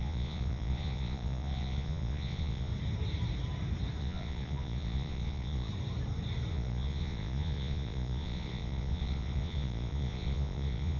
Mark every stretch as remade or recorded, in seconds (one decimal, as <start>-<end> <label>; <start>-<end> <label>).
0.0-2.7 remade; 2.7-4.0 recorded; 4.0-5.7 remade; 5.7-6.5 recorded; 6.5-11.0 remade